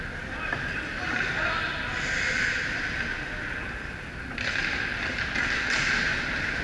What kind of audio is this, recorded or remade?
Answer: recorded